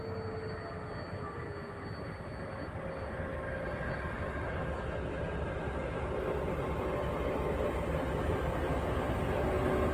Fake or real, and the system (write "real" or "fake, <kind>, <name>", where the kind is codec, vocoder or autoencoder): real